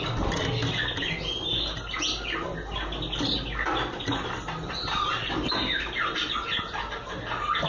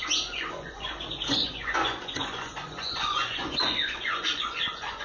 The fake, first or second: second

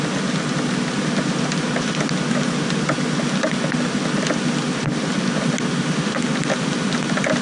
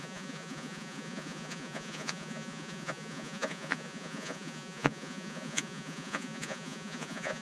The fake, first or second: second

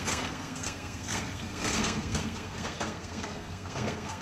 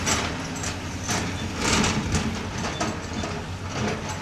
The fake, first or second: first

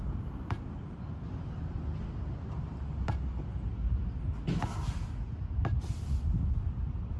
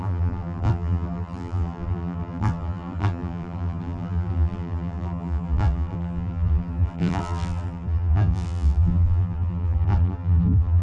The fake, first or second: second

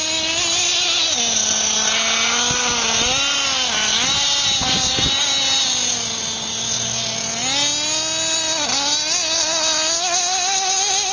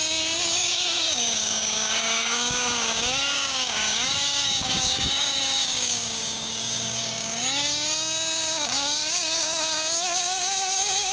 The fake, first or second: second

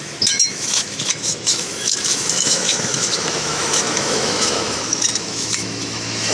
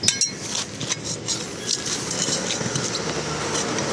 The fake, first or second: first